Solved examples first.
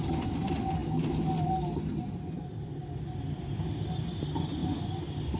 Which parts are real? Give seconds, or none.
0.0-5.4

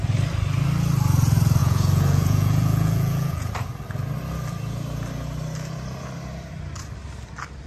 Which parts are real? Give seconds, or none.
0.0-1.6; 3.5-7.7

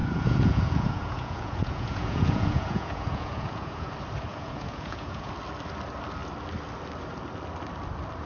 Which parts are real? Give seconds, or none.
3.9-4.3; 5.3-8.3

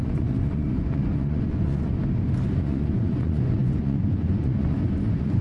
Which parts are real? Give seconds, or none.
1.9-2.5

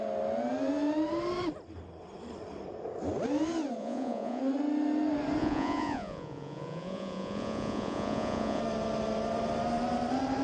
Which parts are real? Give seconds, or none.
0.0-3.8; 4.4-5.4; 8.6-10.4